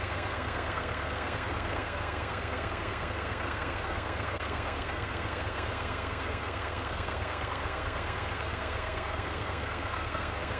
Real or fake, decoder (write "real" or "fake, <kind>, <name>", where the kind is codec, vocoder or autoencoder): fake, codec, SNAC